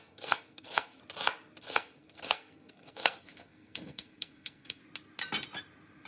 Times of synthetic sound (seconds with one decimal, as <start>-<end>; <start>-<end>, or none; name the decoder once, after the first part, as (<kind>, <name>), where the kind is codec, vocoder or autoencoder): 0.0-1.0 (codec, SNAC); 1.6-4.8